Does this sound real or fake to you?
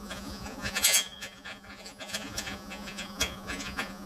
fake